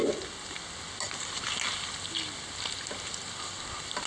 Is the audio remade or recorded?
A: recorded